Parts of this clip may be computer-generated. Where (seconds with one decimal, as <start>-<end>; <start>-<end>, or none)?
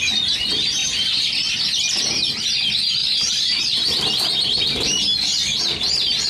3.0-5.0